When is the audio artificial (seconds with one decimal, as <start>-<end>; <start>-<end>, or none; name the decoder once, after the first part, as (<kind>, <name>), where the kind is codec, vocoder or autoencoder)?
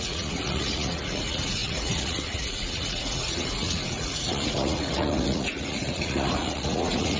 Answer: 0.0-7.2 (vocoder, Vocos)